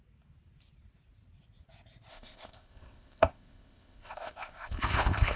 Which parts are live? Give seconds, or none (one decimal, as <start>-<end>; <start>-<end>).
0.0-2.1